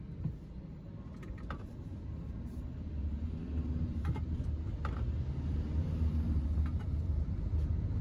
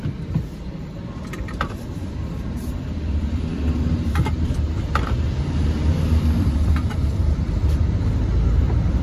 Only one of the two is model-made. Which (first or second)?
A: second